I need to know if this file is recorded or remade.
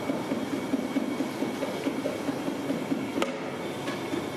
recorded